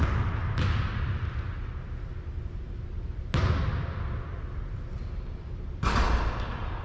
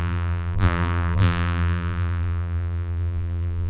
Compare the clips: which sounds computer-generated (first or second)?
second